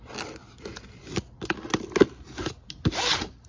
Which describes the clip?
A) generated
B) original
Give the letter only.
B